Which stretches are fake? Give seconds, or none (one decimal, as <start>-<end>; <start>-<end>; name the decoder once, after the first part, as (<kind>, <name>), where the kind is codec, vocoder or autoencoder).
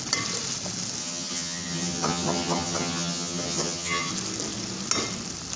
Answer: 1.0-4.1 (vocoder, HiFi-GAN)